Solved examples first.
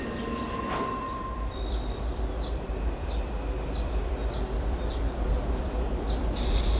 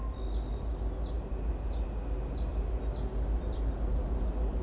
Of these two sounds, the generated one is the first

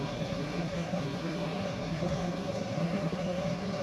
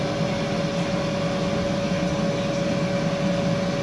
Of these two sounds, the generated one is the first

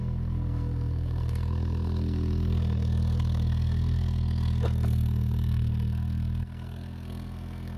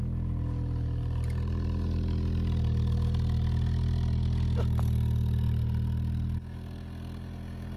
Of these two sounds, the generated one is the first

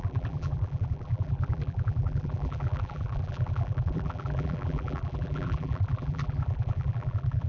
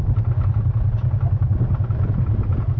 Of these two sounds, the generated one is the first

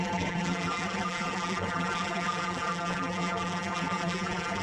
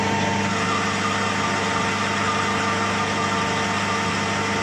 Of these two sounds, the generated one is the first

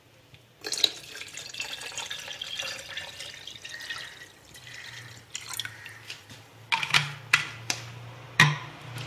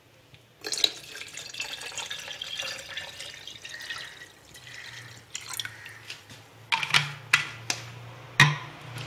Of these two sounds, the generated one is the first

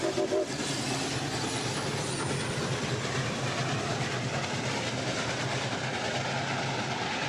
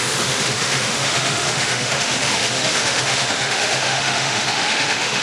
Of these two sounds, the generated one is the second